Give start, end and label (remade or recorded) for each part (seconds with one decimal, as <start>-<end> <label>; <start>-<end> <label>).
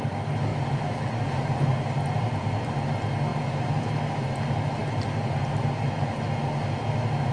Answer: 0.0-0.5 recorded; 0.5-2.7 remade; 2.7-3.3 recorded; 3.3-3.8 remade; 3.8-4.8 recorded; 4.8-6.1 remade; 6.1-7.3 recorded